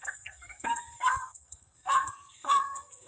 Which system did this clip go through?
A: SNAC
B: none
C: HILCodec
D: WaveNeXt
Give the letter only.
A